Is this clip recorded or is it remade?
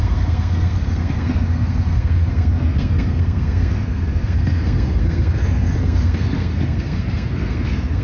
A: remade